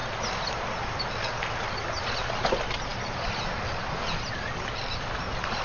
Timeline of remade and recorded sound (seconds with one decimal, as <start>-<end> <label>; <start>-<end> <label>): 0.0-2.9 recorded; 2.9-3.5 remade; 3.5-5.6 recorded